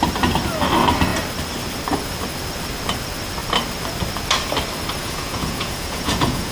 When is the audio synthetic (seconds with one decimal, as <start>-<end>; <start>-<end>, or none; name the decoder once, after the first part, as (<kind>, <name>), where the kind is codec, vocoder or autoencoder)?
5.0-6.5 (vocoder, Vocos)